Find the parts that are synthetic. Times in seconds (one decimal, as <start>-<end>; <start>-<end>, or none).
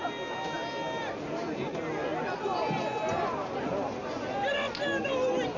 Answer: none